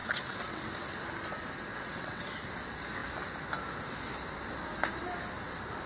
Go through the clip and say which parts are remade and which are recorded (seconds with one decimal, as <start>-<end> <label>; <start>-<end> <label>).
0.0-0.7 remade; 0.7-1.7 recorded; 1.7-2.2 remade; 2.2-5.9 recorded